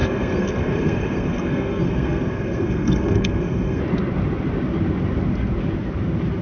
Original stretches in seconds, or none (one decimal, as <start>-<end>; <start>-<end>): 3.8-6.4